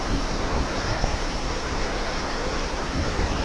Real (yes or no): no